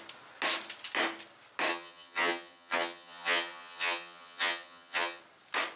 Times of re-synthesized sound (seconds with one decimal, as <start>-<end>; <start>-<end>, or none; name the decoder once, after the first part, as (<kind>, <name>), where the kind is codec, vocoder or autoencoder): 1.7-5.2 (vocoder, HiFi-GAN)

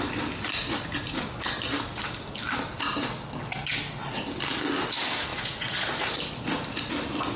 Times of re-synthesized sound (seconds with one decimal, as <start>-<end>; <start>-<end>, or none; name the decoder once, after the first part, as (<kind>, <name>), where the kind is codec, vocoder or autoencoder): 5.3-6.2 (vocoder, Vocos)